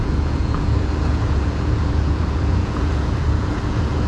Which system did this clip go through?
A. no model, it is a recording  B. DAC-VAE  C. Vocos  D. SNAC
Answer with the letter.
C